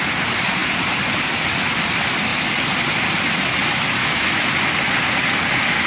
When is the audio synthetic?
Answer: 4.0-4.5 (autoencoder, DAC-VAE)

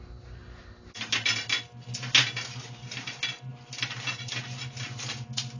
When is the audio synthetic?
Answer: none

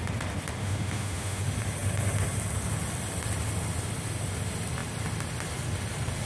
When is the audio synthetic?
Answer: 0.6-1.4 (autoencoder, DAC-VAE)

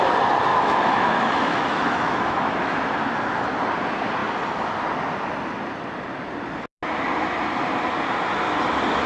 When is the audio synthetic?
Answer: 0.5-2.8 (autoencoder, DAC-VAE)

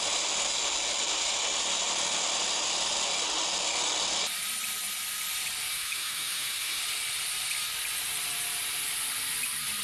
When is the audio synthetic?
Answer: 5.7-6.8 (autoencoder, DAC-VAE)